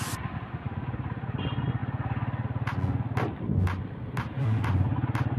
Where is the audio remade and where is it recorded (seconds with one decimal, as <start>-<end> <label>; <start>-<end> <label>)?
0.0-5.4 recorded